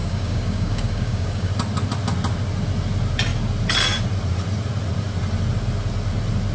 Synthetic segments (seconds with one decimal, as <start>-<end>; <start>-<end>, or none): 0.0-1.5